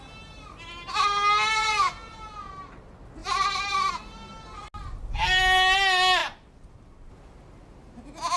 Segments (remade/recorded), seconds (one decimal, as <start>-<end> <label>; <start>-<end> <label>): 0.0-1.6 recorded; 1.6-2.5 remade; 2.5-8.4 recorded